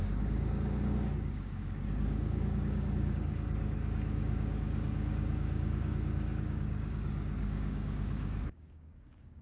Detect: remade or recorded remade